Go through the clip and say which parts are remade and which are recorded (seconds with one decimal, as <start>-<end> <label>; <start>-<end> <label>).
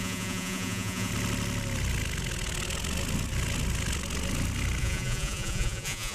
0.0-1.1 remade; 1.1-4.8 recorded; 4.8-6.1 remade